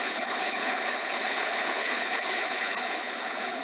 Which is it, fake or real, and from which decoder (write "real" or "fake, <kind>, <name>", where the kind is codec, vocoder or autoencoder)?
fake, codec, HILCodec